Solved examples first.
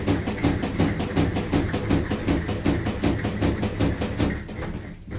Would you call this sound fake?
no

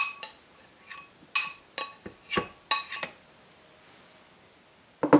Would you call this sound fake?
no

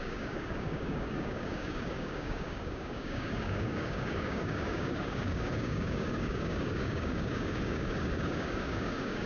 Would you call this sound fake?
yes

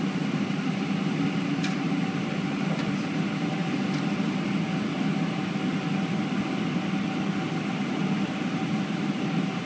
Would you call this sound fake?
no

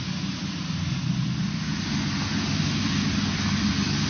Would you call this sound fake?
no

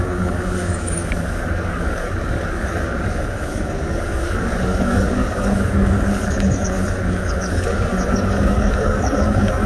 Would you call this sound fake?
yes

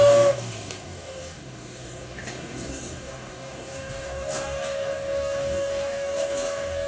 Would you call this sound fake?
yes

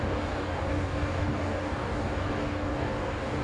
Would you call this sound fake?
yes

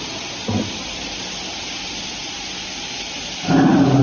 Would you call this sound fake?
no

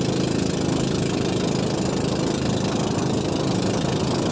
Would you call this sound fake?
no